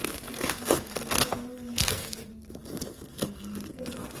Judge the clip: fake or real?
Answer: fake